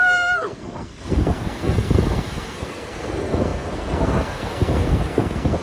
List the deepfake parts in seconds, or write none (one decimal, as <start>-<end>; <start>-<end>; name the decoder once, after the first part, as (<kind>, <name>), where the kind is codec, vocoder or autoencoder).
0.0-5.6 (codec, SNAC)